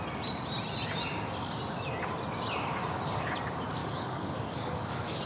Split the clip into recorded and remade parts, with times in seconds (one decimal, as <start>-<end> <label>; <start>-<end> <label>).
0.0-3.8 recorded; 3.8-5.3 remade